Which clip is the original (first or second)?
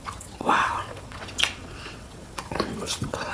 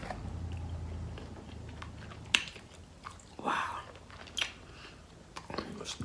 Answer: second